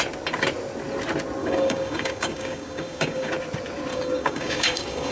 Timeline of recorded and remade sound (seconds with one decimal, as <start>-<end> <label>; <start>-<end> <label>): 0.0-1.4 recorded; 1.4-3.3 remade; 3.3-3.9 recorded; 3.9-5.1 remade